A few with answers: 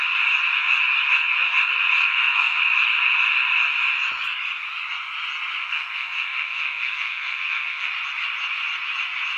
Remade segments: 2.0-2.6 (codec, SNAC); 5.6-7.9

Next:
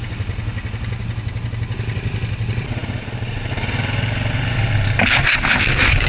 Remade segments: none

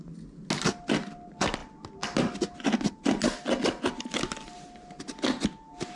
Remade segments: none

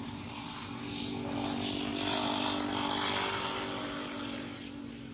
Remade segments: none

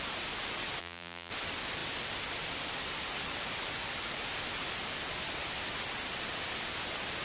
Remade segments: 0.8-1.3 (vocoder, BigVGAN v2)

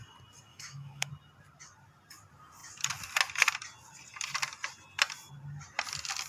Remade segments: 0.5-1.1 (autoencoder, DAC-VAE)

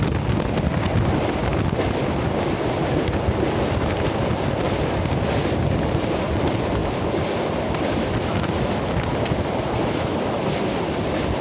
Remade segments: none

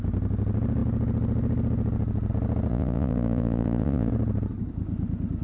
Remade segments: 2.7-4.1 (vocoder, Vocos)